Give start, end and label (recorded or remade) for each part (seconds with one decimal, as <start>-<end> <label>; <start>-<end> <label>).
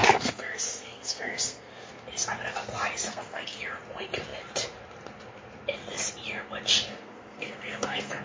0.0-1.9 remade; 1.9-3.1 recorded; 3.1-3.6 remade; 3.6-6.9 recorded; 6.9-8.2 remade